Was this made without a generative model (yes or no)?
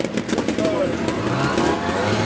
yes